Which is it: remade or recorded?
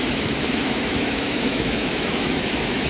remade